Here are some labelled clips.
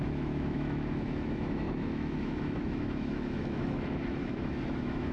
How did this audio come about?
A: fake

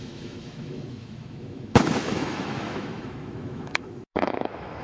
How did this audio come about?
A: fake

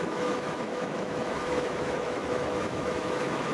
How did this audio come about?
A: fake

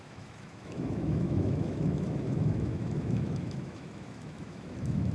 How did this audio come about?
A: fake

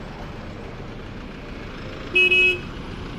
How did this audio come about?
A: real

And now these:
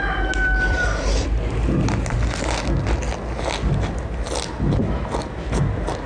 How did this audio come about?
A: real